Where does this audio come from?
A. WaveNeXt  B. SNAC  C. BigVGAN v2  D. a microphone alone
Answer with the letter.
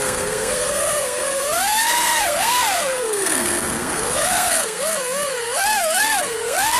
B